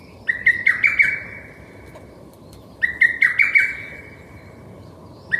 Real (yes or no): yes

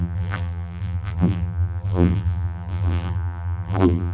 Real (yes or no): no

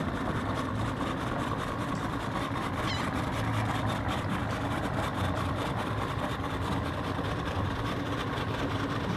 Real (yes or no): no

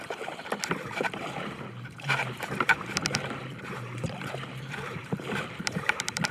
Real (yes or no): no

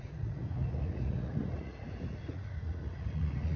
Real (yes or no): no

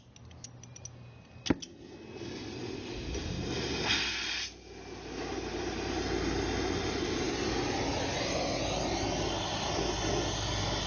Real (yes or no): yes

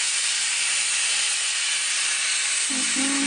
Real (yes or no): yes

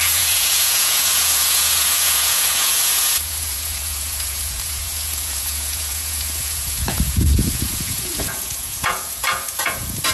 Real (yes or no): no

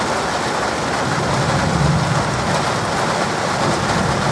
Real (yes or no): yes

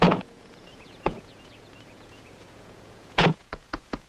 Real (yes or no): no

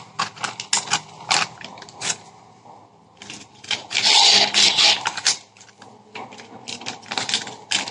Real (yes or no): yes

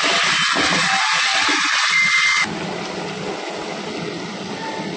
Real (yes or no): yes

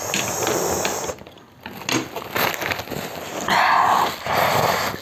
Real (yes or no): yes